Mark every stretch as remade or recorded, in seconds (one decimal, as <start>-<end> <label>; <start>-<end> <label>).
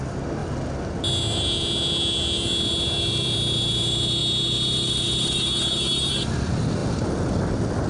0.0-7.9 recorded